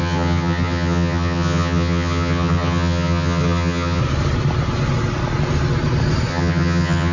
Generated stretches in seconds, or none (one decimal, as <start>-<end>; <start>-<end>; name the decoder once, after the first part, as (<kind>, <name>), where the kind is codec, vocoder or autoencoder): 0.0-4.0 (vocoder, HiFi-GAN); 6.3-7.1